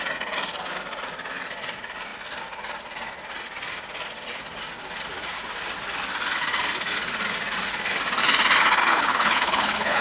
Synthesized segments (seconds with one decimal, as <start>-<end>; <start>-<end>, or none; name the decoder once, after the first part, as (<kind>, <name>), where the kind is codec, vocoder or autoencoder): 8.8-10.0 (codec, HILCodec)